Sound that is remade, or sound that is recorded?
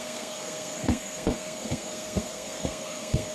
remade